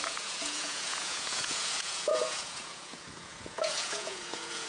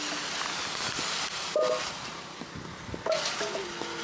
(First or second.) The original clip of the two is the second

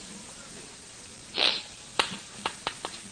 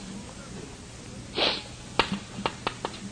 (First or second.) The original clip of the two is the second